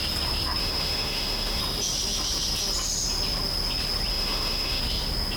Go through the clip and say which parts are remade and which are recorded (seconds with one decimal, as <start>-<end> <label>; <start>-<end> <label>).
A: 0.0-0.6 recorded; 0.6-1.6 remade; 1.6-4.1 recorded; 4.1-4.8 remade; 4.8-5.4 recorded